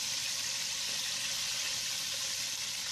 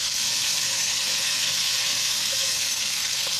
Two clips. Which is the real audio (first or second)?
first